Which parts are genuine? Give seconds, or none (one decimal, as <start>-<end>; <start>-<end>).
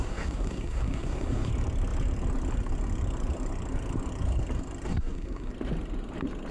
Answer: 1.5-4.9; 5.5-6.5